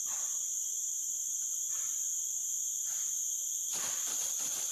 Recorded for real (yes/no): no